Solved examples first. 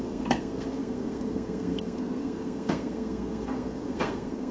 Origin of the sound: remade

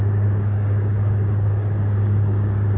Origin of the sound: remade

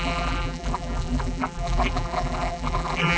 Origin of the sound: remade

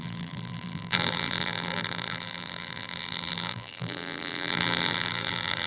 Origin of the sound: remade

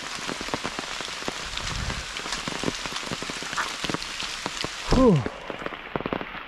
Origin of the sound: recorded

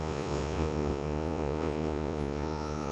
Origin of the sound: remade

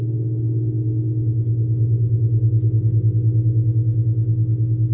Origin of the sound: recorded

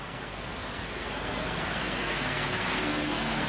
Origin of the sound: remade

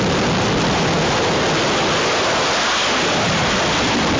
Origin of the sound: remade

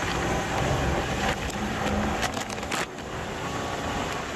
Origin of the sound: recorded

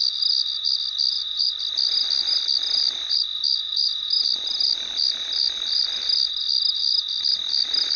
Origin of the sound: recorded